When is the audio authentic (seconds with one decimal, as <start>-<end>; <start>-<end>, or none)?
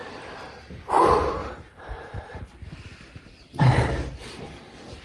0.0-1.0